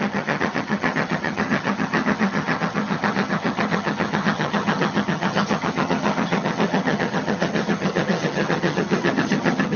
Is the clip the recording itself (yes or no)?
no